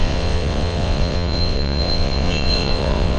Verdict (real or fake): fake